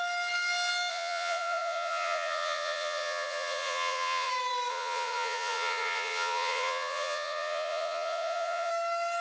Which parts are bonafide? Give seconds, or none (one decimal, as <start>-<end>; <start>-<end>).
0.0-0.9; 4.3-4.7; 8.7-9.2